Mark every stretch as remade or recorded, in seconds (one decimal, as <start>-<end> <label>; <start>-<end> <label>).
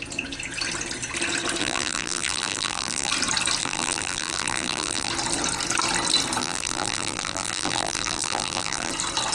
0.0-1.6 recorded; 1.6-3.1 remade; 3.1-3.6 recorded; 3.6-5.1 remade; 5.1-6.4 recorded; 6.4-8.9 remade; 8.9-9.3 recorded